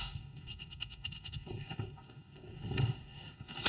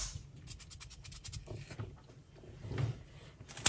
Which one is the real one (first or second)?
second